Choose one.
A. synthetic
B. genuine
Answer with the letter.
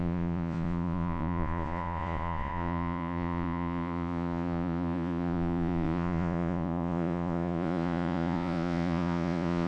A